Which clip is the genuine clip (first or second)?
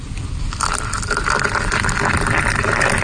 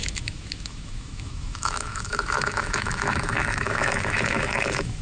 first